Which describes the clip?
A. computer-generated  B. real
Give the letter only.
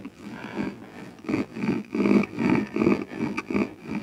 A